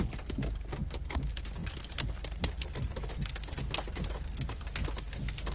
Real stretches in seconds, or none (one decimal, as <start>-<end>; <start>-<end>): 0.0-5.5

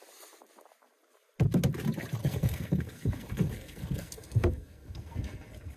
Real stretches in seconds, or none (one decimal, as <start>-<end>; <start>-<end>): 0.0-2.2

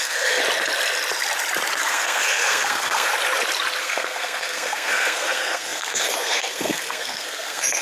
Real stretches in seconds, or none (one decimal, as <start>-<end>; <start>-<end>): 0.4-1.8; 3.1-3.8